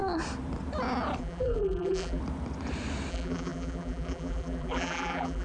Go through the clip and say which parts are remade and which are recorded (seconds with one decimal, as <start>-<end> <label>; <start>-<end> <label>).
0.0-1.2 recorded; 1.2-2.2 remade; 2.2-3.1 recorded; 3.1-5.4 remade